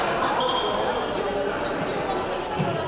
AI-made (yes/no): no